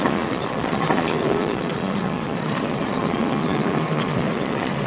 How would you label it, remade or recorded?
remade